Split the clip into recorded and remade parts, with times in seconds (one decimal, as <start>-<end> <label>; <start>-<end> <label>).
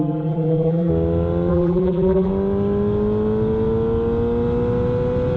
0.0-0.9 remade; 0.9-1.5 recorded; 1.5-2.3 remade; 2.3-5.4 recorded